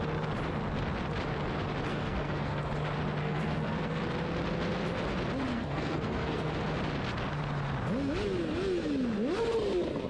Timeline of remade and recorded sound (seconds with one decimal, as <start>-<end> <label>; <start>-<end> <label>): 0.0-1.9 recorded; 1.9-2.7 remade; 2.7-3.2 recorded; 3.2-4.0 remade; 4.0-5.5 recorded; 5.5-6.5 remade; 6.5-10.1 recorded